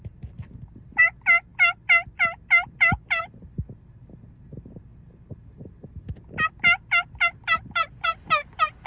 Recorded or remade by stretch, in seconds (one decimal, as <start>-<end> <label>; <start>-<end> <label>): 0.0-8.9 recorded